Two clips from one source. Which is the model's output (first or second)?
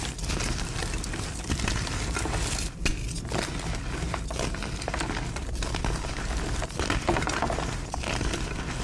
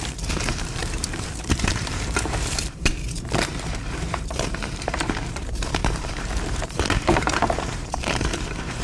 second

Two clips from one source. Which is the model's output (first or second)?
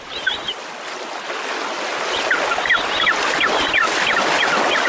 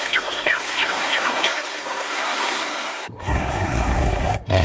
second